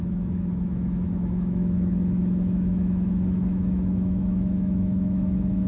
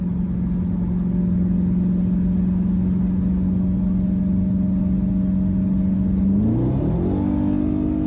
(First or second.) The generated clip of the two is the first